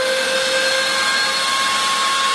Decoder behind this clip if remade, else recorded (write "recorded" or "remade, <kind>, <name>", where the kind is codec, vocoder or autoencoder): recorded